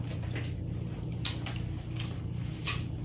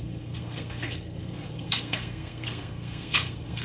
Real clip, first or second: first